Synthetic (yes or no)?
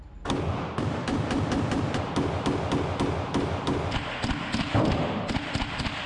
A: no